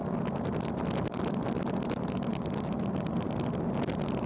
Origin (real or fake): real